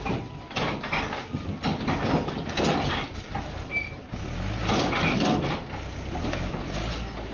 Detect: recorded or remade recorded